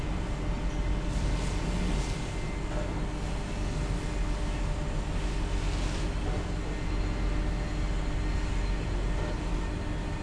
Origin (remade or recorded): recorded